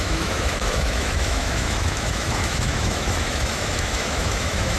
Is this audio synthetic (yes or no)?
yes